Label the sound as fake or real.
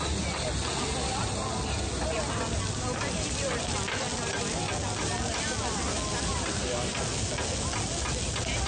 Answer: real